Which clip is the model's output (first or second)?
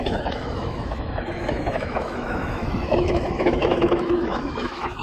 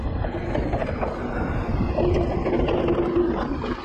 first